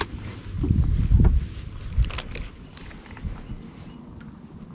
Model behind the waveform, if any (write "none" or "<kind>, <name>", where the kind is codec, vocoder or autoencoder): none